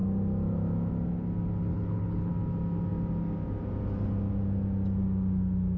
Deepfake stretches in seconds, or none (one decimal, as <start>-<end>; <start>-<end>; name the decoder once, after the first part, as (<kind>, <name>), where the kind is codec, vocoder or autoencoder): 1.7-2.3 (codec, HILCodec)